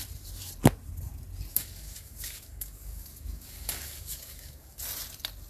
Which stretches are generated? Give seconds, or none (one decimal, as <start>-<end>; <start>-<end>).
1.5-4.8